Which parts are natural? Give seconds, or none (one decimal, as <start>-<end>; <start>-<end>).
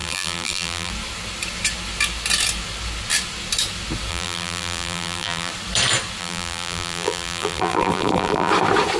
0.9-4.1; 5.5-6.2; 8.5-9.0